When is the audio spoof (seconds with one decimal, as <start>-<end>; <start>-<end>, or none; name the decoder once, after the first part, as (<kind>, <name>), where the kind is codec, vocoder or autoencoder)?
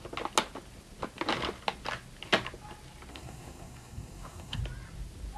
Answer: 3.1-4.6 (codec, SNAC)